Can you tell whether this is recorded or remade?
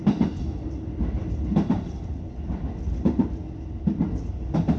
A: recorded